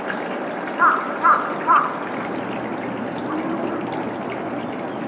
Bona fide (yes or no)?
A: yes